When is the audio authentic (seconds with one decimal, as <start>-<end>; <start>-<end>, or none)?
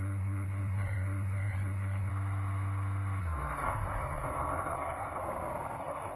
2.1-3.2; 5.2-5.8